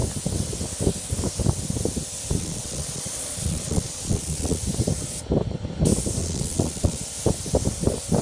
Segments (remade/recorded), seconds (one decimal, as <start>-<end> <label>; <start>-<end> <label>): 0.0-2.4 recorded; 2.4-4.6 remade; 4.6-6.2 recorded; 6.2-7.0 remade; 7.0-8.2 recorded